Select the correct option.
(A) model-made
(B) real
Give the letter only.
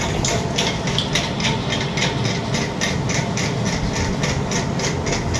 B